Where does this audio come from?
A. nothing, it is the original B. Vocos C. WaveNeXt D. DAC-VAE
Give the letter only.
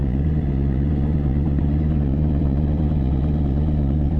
B